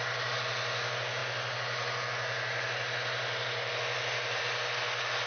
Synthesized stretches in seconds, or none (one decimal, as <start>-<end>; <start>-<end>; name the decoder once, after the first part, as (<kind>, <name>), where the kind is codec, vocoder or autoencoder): none